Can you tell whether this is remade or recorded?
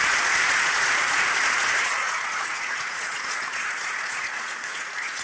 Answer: remade